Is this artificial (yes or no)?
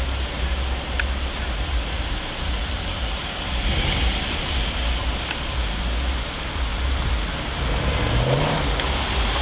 no